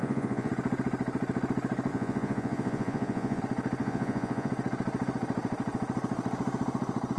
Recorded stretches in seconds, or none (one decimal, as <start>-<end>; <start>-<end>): 0.5-1.9; 3.4-3.8; 4.5-7.2